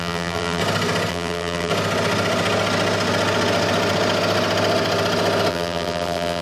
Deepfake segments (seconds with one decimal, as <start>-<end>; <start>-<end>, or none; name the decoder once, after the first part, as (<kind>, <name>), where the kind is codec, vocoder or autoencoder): 0.0-0.6 (vocoder, BigVGAN v2); 1.1-1.7; 5.5-6.4